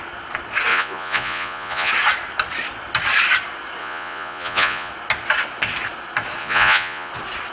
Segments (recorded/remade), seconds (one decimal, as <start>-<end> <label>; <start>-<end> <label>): 0.0-0.7 recorded; 0.7-1.9 remade; 1.9-3.8 recorded; 3.8-4.9 remade; 4.9-6.4 recorded; 6.4-7.1 remade; 7.1-7.5 recorded